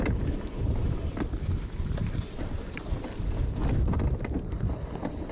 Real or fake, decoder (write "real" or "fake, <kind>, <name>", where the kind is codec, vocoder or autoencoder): fake, vocoder, BigVGAN v2